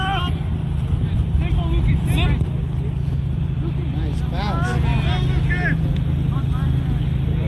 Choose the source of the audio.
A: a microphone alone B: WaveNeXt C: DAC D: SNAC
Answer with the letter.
A